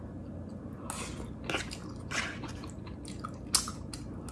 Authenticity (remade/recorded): recorded